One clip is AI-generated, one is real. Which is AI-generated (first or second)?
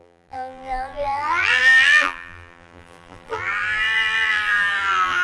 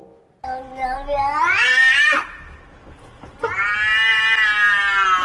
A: first